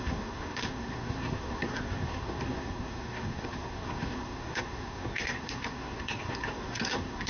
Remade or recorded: remade